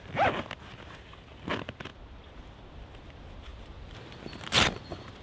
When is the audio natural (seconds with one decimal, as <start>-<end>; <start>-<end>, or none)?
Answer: 0.0-3.5; 4.1-5.2